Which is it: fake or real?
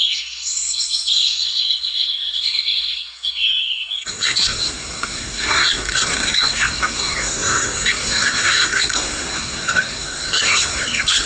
fake